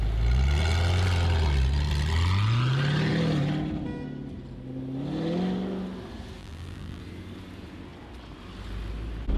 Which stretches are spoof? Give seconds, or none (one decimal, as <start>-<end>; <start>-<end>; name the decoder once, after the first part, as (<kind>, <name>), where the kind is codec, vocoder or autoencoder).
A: 6.4-7.0 (vocoder, BigVGAN v2)